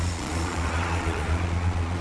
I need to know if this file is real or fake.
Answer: fake